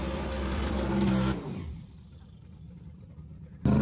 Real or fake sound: fake